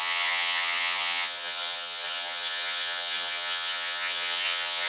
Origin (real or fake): fake